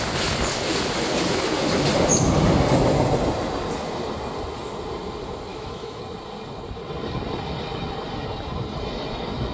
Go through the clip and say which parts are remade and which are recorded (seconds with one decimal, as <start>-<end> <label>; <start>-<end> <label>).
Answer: 0.0-5.5 recorded; 5.5-6.0 remade; 6.0-9.5 recorded